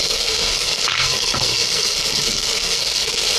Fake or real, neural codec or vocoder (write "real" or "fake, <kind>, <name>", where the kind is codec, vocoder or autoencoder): fake, codec, SNAC